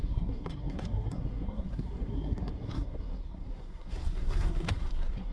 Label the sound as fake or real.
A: fake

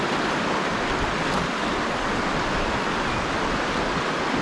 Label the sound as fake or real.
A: real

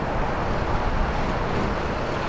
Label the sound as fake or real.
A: real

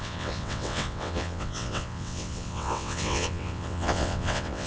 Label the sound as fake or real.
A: fake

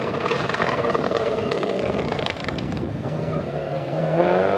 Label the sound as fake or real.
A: fake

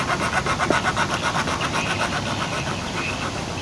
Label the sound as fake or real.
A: real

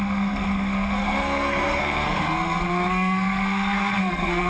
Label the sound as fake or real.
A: fake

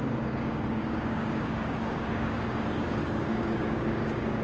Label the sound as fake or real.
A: fake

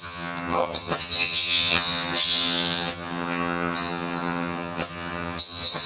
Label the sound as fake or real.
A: fake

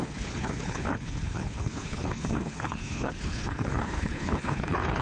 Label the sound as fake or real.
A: fake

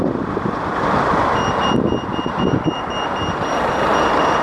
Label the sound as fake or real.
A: real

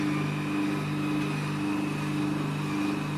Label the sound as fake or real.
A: real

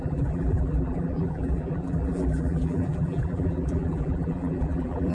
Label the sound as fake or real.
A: fake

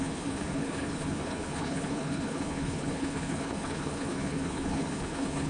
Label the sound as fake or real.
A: fake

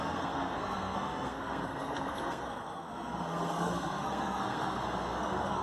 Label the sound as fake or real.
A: fake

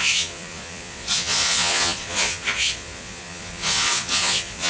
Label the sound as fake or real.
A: fake